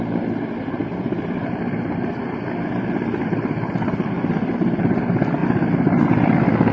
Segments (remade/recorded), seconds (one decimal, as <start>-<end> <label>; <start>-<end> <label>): 0.0-0.8 recorded; 0.8-4.8 remade; 4.8-6.7 recorded

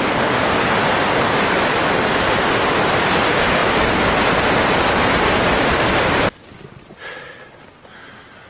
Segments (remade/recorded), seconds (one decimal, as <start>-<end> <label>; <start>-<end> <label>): 0.0-8.5 recorded

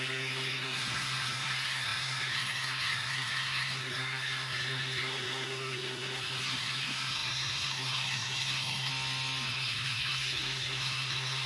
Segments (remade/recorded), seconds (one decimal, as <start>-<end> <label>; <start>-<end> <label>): 0.0-8.9 remade; 8.9-9.5 recorded; 9.5-11.5 remade

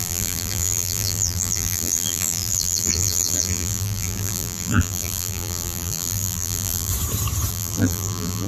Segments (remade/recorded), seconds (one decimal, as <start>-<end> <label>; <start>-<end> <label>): 0.0-6.9 remade; 6.9-7.5 recorded; 7.5-8.5 remade

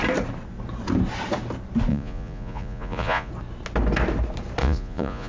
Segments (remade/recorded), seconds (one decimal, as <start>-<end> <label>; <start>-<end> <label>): 0.0-1.9 recorded; 1.9-3.3 remade; 3.3-4.6 recorded; 4.6-5.3 remade

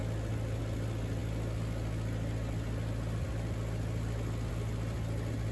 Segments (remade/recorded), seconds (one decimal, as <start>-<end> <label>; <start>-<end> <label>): 0.0-5.5 recorded